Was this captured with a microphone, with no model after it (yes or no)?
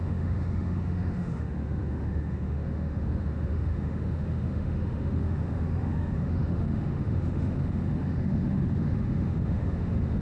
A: no